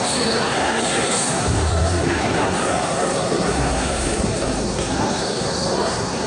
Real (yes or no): no